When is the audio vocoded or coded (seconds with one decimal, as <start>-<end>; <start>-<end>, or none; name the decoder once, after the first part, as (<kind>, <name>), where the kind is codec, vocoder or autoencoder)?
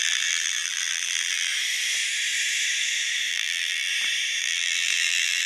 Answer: 0.0-1.5 (vocoder, BigVGAN v2); 3.3-3.9; 4.4-5.5